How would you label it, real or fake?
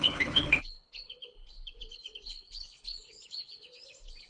fake